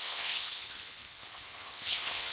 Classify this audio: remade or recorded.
remade